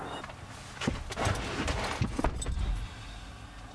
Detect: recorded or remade recorded